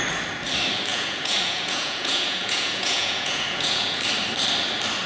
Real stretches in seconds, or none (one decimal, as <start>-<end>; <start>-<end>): 0.0-0.9; 4.0-5.1